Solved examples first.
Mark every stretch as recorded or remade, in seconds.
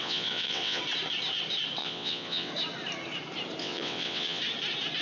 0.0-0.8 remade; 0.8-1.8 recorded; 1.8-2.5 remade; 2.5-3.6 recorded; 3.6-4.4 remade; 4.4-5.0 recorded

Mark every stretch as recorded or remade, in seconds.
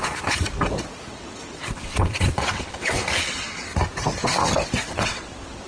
0.0-1.1 recorded; 1.1-3.7 remade; 3.7-4.9 recorded; 4.9-5.7 remade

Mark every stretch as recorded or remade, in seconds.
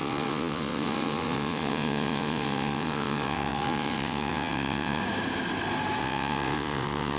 0.0-5.0 remade; 5.0-6.0 recorded; 6.0-7.2 remade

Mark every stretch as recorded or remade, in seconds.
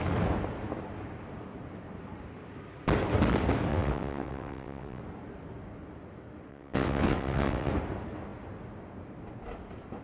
0.0-3.7 recorded; 3.7-5.0 remade; 5.0-6.5 recorded; 6.5-7.7 remade; 7.7-10.0 recorded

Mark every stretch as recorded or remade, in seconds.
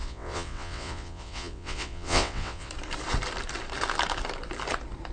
0.0-2.7 remade; 2.7-5.1 recorded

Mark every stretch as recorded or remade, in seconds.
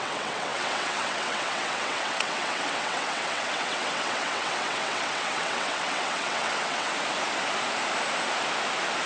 0.0-6.9 remade; 6.9-9.1 recorded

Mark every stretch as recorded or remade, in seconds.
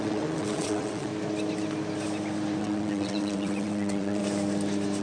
0.0-1.1 remade; 1.1-2.6 recorded; 2.6-4.2 remade; 4.2-5.0 recorded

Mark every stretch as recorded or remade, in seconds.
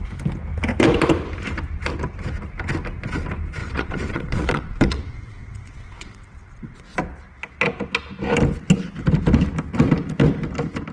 0.0-3.6 recorded; 3.6-6.8 remade; 6.8-10.9 recorded